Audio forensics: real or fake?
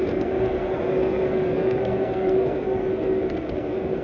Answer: fake